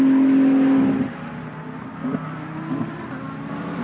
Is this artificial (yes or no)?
no